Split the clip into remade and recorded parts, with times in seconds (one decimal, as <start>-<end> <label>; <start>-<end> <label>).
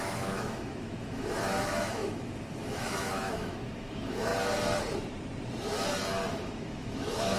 0.0-4.3 remade; 4.3-6.3 recorded; 6.3-7.4 remade